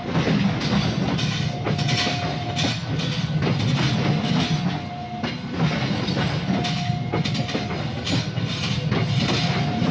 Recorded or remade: recorded